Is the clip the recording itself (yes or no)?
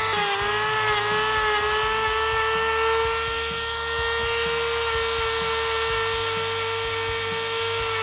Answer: yes